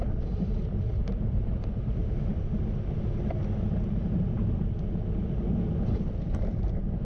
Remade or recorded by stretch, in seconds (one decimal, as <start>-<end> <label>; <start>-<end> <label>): 0.0-2.0 remade; 2.0-6.2 recorded; 6.2-7.0 remade